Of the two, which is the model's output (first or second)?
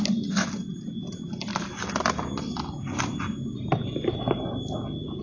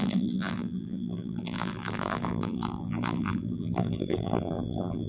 second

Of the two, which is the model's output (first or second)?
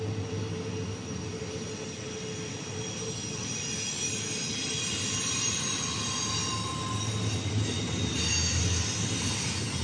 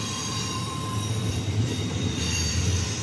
second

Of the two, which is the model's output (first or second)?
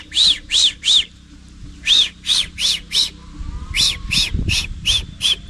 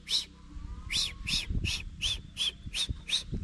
first